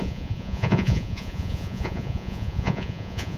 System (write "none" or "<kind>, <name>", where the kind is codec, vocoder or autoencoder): vocoder, Vocos